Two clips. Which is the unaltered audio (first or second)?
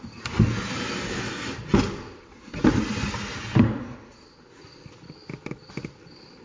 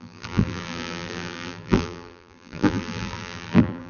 first